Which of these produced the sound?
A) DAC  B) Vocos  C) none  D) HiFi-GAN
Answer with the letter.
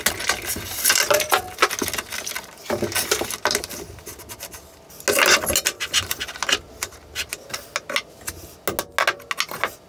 C